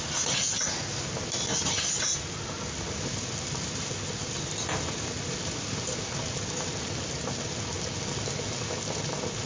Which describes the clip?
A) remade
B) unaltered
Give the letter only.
B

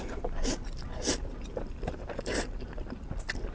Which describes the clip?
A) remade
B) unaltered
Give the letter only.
B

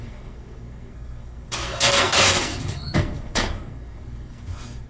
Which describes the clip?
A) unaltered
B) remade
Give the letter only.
B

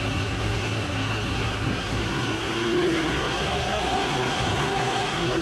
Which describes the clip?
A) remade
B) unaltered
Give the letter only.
A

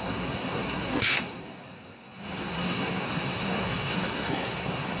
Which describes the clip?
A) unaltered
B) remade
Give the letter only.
B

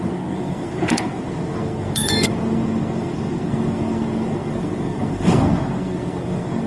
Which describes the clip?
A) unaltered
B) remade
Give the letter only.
B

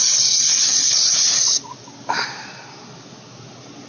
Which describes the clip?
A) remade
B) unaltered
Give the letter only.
B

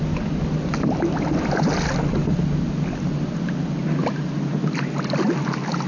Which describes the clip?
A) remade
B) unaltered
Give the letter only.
B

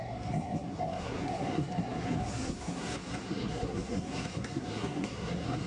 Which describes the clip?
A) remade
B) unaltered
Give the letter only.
A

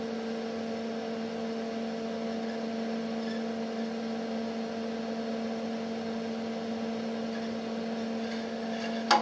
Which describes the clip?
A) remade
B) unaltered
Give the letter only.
B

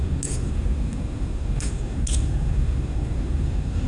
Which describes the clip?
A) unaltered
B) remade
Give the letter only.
B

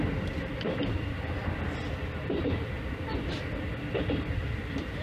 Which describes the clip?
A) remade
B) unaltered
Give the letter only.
B